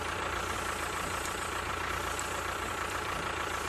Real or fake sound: fake